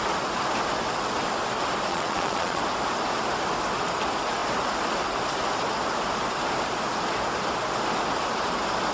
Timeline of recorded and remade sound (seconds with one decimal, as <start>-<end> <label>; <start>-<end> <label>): 0.0-1.9 recorded; 1.9-2.6 remade; 2.6-8.9 recorded